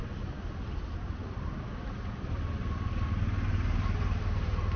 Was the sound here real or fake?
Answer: real